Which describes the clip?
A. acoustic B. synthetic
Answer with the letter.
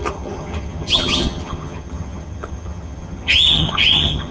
B